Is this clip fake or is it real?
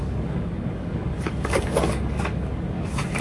fake